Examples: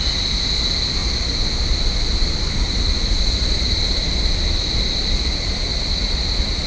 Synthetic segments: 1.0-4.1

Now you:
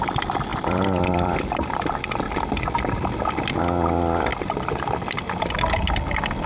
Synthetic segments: 0.5-3.3; 4.3-5.5

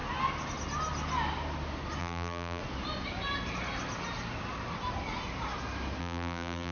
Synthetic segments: 2.0-2.6; 6.0-6.7

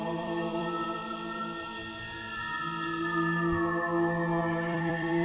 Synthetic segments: 0.0-1.4; 4.4-5.2

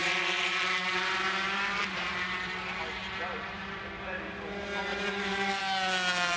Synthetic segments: 0.0-3.8; 4.9-5.6

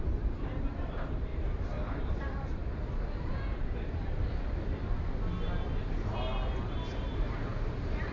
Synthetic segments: 0.0-2.6; 3.2-3.6; 6.9-8.1

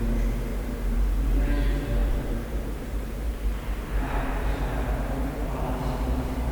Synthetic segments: 0.5-1.5; 2.0-5.9

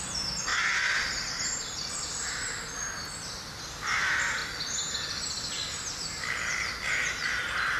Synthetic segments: 0.5-1.6